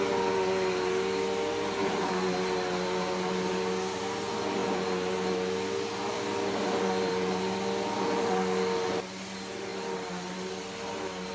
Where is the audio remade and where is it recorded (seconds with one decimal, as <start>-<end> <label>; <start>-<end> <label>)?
0.0-11.3 recorded